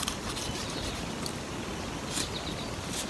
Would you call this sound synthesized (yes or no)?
no